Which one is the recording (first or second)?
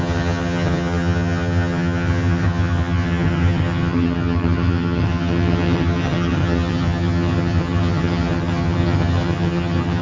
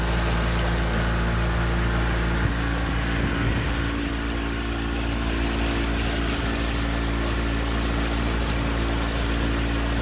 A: second